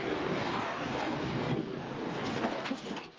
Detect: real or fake fake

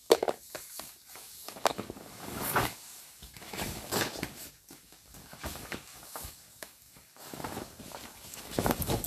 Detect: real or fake fake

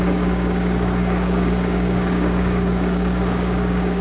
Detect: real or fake fake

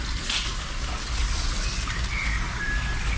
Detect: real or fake real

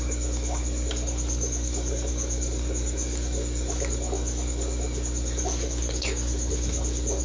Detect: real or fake fake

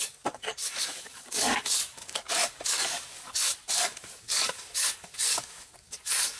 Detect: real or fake fake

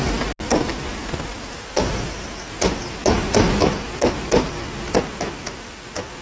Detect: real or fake real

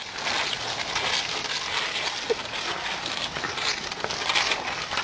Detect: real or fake real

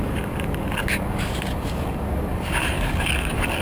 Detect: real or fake fake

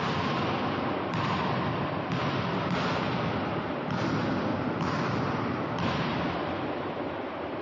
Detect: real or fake real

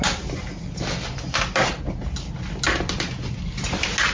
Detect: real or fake real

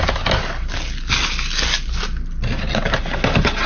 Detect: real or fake real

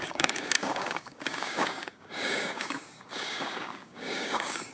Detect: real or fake fake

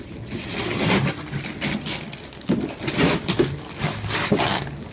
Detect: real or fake real